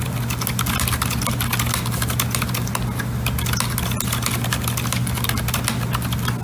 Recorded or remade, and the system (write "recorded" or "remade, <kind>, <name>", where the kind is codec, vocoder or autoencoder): recorded